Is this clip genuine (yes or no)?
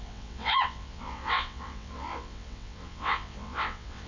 no